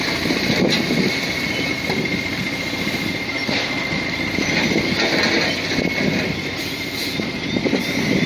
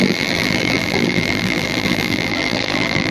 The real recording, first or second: first